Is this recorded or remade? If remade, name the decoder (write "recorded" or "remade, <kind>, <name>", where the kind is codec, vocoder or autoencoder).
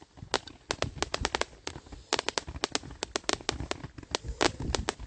recorded